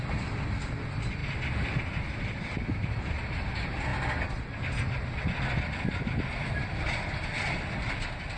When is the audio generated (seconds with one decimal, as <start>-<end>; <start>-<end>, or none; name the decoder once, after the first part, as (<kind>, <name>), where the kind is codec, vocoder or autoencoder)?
none